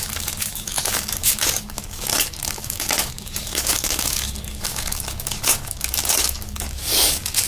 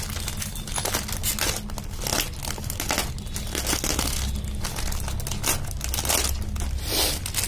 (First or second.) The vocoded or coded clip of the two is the first